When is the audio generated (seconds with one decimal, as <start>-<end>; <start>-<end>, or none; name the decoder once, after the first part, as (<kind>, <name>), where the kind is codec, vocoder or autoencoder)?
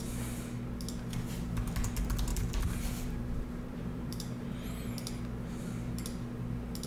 2.3-4.9 (vocoder, BigVGAN v2)